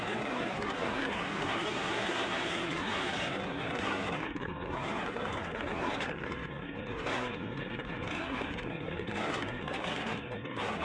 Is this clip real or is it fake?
fake